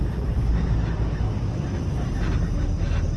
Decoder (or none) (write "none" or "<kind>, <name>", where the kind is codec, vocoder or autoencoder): none